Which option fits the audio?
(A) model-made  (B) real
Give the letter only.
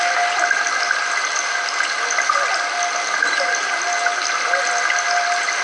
B